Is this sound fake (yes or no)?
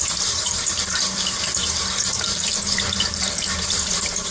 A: yes